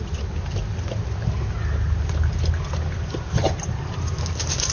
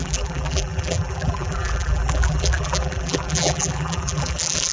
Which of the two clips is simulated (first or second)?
second